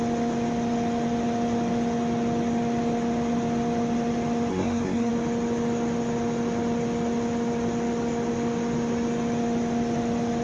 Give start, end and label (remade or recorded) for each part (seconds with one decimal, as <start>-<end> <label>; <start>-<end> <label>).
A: 0.0-4.5 recorded; 4.5-5.1 remade; 5.1-10.4 recorded